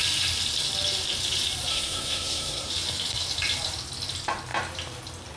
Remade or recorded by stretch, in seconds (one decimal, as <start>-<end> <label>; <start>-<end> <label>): 0.0-1.7 recorded; 1.7-2.7 remade; 2.7-5.4 recorded